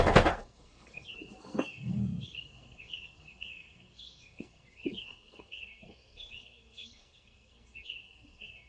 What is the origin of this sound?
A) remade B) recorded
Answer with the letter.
A